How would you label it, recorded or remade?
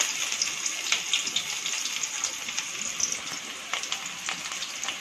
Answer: recorded